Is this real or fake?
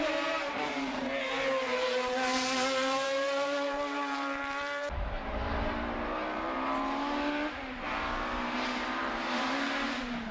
fake